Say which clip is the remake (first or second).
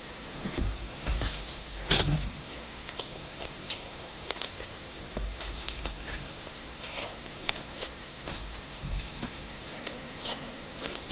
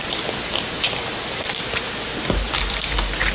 first